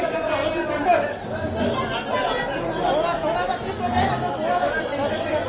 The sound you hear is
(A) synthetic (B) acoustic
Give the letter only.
B